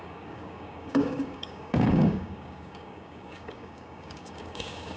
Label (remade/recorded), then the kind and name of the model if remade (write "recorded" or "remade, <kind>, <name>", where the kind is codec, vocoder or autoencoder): remade, codec, DAC